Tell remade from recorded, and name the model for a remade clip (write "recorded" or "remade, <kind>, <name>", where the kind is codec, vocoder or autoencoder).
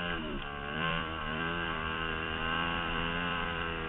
remade, vocoder, BigVGAN v2